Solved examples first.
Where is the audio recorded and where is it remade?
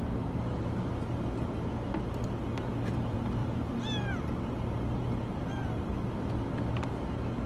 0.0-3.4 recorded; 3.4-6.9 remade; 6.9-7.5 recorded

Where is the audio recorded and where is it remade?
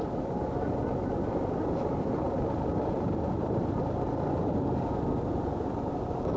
0.0-3.1 recorded; 3.1-4.3 remade; 4.3-6.4 recorded